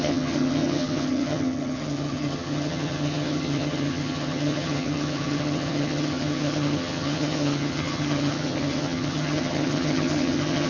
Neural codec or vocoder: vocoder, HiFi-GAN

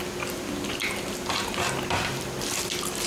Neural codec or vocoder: none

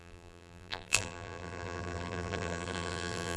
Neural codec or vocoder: vocoder, BigVGAN v2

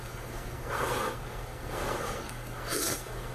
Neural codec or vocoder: codec, SNAC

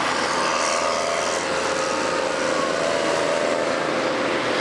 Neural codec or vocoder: none